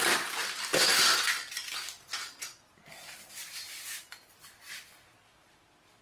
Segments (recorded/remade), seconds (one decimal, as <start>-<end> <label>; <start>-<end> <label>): 0.0-6.0 recorded

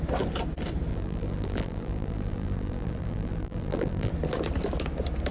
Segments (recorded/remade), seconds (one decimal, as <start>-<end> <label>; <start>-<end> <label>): 0.0-0.9 recorded; 0.9-4.1 remade; 4.1-5.3 recorded

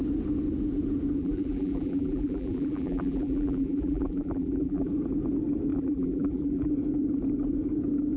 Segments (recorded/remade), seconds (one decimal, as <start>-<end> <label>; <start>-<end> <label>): 0.0-1.2 recorded; 1.2-4.9 remade; 4.9-5.7 recorded; 5.7-6.7 remade; 6.7-8.2 recorded

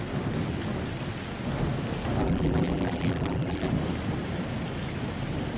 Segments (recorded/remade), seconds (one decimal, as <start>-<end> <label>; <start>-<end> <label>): 0.0-2.2 recorded; 2.2-3.7 remade; 3.7-5.6 recorded

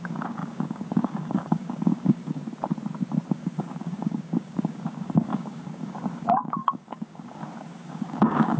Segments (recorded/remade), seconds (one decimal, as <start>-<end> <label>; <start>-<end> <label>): 0.0-2.4 remade; 2.4-3.3 recorded; 3.3-8.6 remade

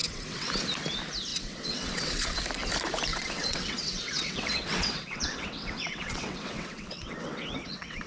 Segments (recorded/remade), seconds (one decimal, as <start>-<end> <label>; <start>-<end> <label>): 0.0-0.5 remade; 0.5-1.3 recorded; 1.3-2.4 remade; 2.4-3.1 recorded; 3.1-8.1 remade